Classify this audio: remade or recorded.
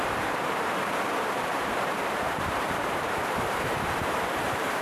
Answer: remade